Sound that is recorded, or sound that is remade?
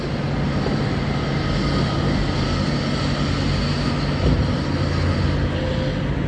recorded